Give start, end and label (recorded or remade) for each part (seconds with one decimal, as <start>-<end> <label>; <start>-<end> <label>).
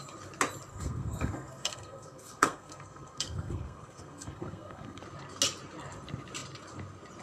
0.0-0.7 recorded; 0.7-5.0 remade; 5.0-7.2 recorded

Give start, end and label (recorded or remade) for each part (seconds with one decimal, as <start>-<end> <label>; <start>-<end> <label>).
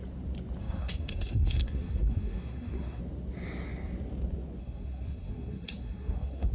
0.0-0.6 recorded; 0.6-3.0 remade; 3.0-4.6 recorded; 4.6-6.5 remade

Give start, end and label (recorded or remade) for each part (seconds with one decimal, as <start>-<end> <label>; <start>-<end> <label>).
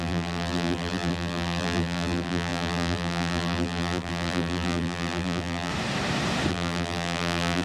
0.0-5.7 remade; 5.7-6.5 recorded; 6.5-7.6 remade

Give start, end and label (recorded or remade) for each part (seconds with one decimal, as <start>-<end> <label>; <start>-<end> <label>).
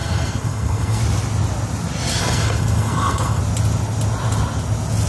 0.0-1.0 remade; 1.0-2.2 recorded; 2.2-3.4 remade; 3.4-5.1 recorded